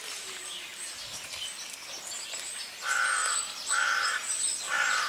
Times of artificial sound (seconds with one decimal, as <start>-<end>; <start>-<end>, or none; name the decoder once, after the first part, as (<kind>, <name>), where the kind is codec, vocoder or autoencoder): none